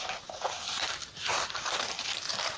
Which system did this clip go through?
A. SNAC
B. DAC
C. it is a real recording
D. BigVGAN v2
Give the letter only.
D